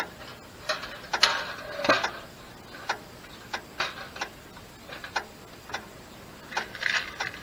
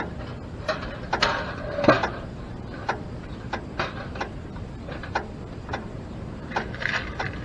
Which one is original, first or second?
first